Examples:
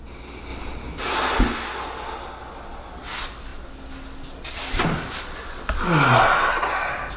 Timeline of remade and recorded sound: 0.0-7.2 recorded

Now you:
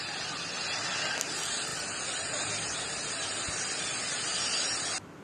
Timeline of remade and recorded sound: 0.0-5.2 recorded

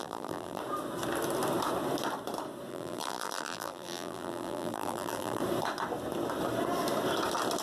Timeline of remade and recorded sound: 0.0-0.6 remade; 0.6-2.7 recorded; 2.7-5.4 remade; 5.4-7.6 recorded

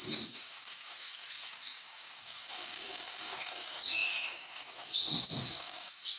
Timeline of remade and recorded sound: 0.0-6.2 remade